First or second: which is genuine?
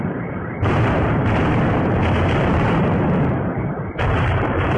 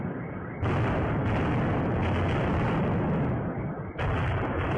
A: second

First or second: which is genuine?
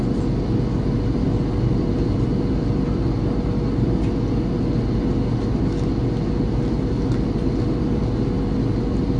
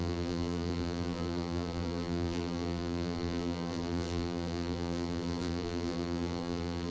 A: first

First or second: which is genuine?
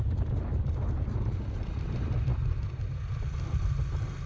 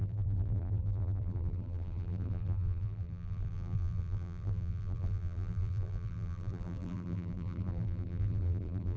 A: first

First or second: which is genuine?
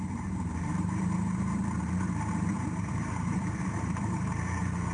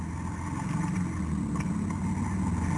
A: second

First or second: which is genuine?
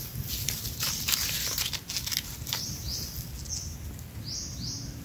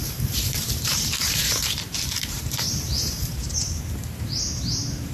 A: first